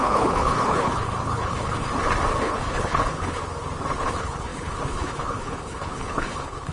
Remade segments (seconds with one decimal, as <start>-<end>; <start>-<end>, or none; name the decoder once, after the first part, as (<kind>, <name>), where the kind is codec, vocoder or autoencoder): 0.0-1.9 (codec, HILCodec); 2.4-3.4; 4.0-6.7